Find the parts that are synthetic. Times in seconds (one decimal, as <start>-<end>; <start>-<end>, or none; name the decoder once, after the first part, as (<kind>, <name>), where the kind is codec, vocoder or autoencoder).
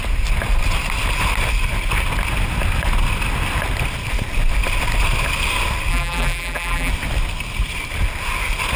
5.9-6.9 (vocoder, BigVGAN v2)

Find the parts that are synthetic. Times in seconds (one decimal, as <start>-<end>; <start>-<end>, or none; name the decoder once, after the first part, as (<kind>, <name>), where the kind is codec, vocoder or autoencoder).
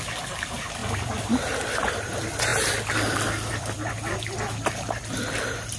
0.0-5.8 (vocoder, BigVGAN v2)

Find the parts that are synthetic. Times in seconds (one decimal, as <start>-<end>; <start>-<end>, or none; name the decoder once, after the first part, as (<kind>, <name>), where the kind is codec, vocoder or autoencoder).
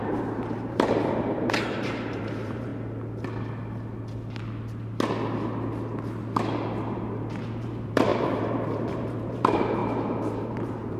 0.0-2.7 (vocoder, BigVGAN v2); 7.5-11.0